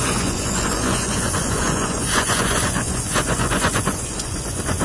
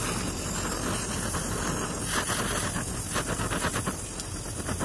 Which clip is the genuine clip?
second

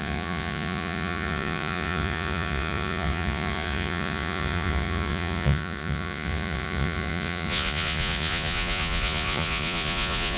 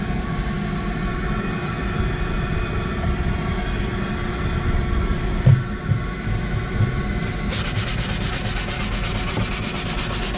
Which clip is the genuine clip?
second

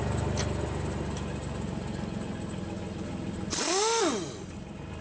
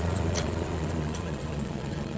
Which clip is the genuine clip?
first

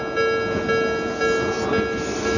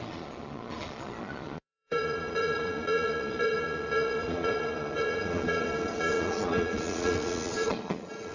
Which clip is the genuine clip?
first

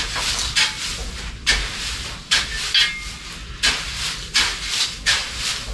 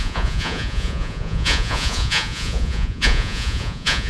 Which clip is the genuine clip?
first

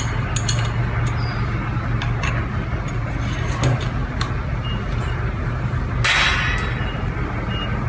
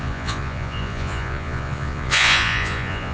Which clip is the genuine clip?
first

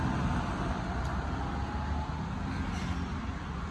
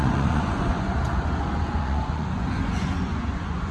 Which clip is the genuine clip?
first